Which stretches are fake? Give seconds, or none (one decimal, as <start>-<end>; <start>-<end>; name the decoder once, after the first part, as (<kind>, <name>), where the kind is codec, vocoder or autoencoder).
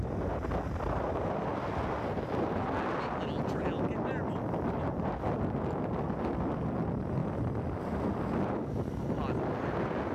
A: none